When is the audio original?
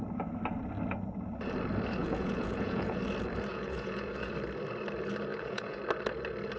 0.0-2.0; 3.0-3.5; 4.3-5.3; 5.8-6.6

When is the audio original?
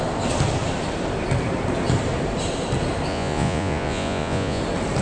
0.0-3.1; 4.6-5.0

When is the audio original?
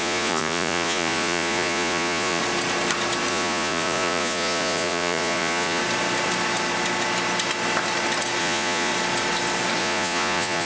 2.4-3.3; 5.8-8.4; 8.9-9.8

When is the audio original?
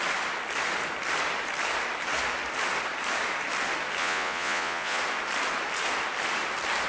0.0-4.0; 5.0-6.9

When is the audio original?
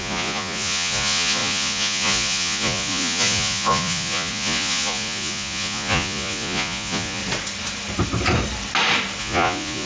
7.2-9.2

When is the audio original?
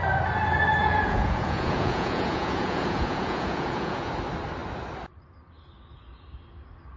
0.0-0.8; 4.1-7.0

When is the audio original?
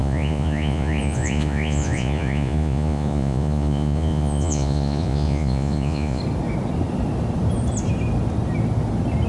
6.2-9.3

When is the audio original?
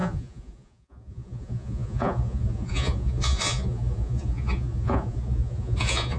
none